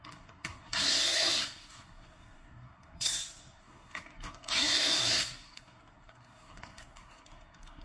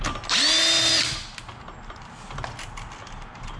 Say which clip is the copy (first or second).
first